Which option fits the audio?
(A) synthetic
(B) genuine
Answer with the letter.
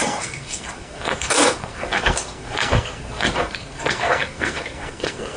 A